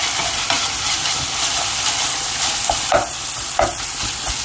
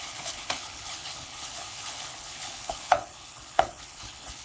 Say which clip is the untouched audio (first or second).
first